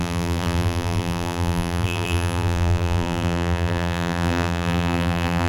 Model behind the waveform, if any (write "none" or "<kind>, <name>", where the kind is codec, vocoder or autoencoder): vocoder, BigVGAN v2